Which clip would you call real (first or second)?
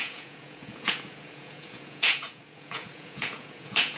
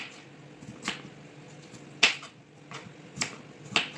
second